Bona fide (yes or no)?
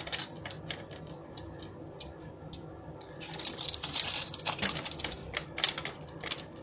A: yes